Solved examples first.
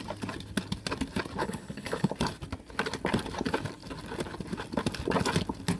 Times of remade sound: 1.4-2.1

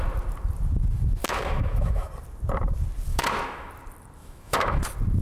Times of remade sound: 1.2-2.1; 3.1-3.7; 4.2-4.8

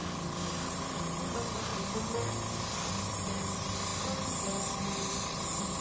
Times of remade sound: 0.5-1.7; 3.1-3.9; 4.5-5.8

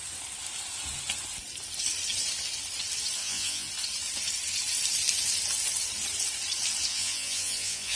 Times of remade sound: 3.2-3.7; 6.9-8.0

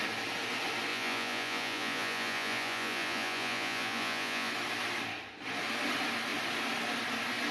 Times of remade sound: 0.9-4.5